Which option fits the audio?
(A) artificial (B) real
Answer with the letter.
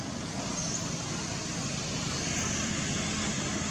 B